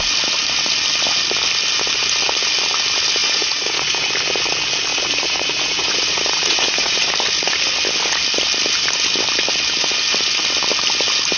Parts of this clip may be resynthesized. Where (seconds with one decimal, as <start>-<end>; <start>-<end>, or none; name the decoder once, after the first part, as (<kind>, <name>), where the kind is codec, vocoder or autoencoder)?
3.2-4.1 (vocoder, Vocos); 4.9-7.1